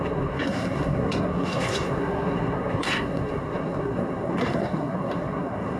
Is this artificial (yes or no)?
yes